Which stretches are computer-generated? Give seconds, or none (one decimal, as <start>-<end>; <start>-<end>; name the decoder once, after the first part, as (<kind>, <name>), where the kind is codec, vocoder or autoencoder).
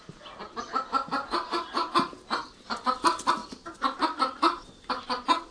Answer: none